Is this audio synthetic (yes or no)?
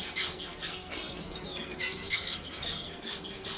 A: yes